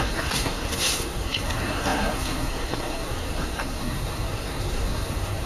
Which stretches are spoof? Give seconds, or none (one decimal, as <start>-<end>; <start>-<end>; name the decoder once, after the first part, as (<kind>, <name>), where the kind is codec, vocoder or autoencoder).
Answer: 0.0-5.5 (codec, SNAC)